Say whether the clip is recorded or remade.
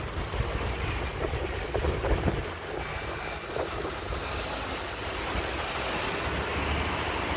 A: recorded